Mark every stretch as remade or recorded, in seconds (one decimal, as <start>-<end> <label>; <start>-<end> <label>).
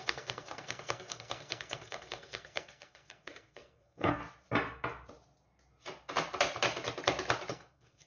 0.0-4.2 remade; 4.2-7.5 recorded; 7.5-8.1 remade